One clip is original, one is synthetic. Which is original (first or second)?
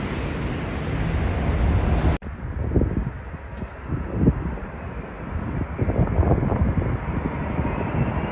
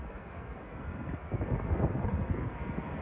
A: first